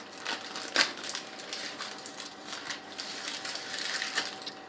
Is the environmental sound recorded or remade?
recorded